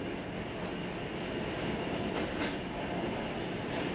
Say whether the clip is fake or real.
real